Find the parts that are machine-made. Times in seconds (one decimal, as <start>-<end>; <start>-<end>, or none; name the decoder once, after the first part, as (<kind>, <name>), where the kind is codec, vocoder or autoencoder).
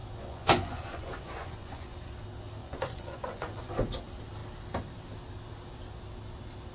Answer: 0.0-2.1 (vocoder, Vocos); 2.6-3.7